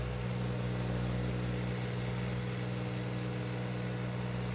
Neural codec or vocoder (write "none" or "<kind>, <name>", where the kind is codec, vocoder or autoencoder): none